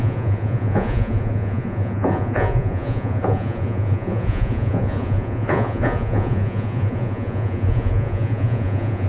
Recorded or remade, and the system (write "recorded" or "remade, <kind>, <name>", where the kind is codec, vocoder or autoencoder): remade, vocoder, Vocos